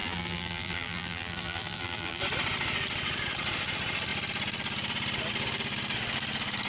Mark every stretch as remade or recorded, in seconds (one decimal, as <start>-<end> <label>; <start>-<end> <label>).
0.0-2.2 remade; 2.2-6.7 recorded